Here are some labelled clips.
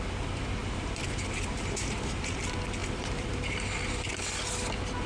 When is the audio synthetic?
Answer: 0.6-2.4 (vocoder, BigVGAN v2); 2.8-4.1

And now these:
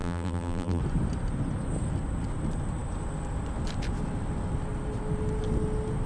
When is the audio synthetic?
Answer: 0.0-0.8 (vocoder, BigVGAN v2)

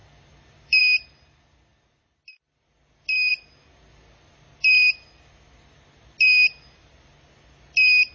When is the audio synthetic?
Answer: none

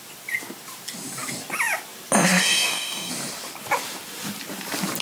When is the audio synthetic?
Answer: 2.4-3.1 (codec, DAC)

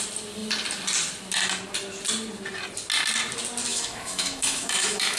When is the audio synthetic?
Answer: 3.7-5.2 (autoencoder, DAC-VAE)

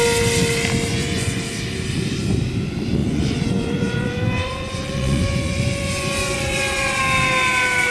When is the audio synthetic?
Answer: 0.9-1.4 (vocoder, Vocos); 3.0-7.0

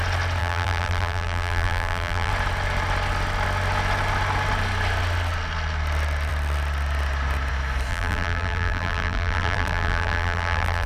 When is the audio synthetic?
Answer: 0.4-2.3 (vocoder, BigVGAN v2); 7.9-10.9

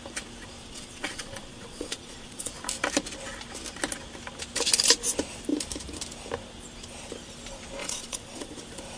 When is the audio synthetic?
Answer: 0.6-2.5 (vocoder, Vocos); 7.8-8.6